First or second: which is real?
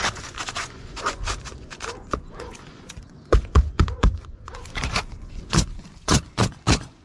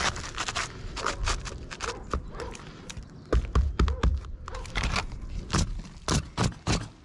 second